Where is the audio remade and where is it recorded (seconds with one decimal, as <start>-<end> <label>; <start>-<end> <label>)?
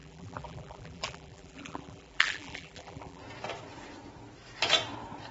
0.0-3.2 remade; 3.2-5.3 recorded